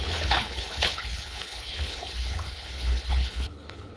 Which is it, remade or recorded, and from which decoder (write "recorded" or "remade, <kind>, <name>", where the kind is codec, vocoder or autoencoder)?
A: remade, codec, HILCodec